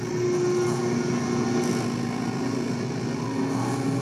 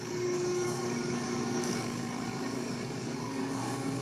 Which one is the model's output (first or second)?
second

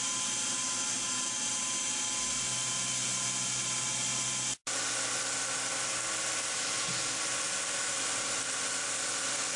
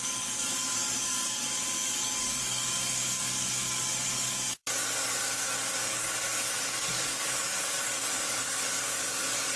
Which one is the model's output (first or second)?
second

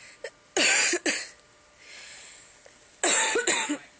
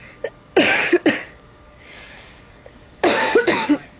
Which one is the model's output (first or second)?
second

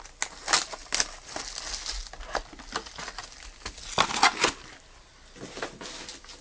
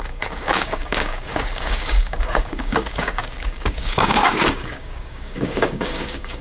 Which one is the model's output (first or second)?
second